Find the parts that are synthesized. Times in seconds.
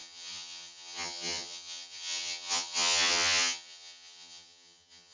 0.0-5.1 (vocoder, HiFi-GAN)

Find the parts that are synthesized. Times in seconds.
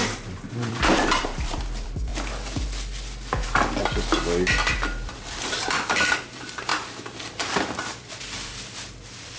0.0-2.1 (vocoder, BigVGAN v2); 5.7-9.4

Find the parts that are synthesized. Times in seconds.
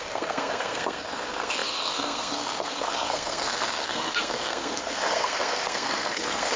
0.0-6.6 (codec, SNAC)